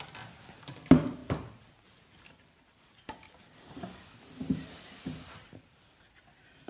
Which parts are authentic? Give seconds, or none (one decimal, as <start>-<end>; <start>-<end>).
1.2-2.3